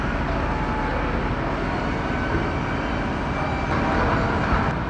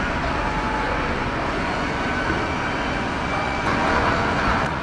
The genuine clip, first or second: first